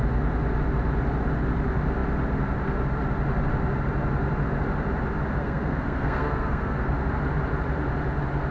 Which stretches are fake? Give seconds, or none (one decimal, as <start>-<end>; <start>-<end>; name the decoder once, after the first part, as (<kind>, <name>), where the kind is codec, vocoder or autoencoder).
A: 5.4-7.1 (codec, SNAC)